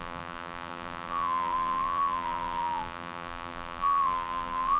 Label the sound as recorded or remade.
remade